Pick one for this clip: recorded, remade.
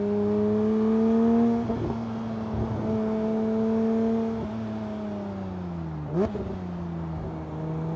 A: recorded